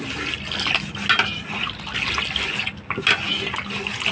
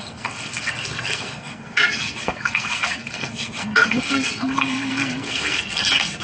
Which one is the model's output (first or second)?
second